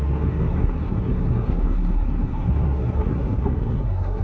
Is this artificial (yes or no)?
yes